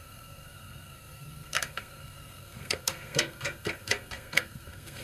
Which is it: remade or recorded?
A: remade